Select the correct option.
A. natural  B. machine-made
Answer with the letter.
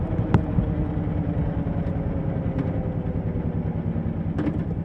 A